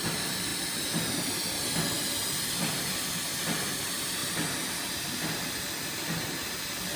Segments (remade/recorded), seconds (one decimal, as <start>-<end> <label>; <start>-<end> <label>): 0.0-7.0 recorded